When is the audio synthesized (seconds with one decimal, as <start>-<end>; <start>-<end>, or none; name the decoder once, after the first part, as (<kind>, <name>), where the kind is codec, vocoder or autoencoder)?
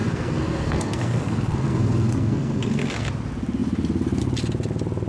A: 0.0-3.1 (codec, SNAC)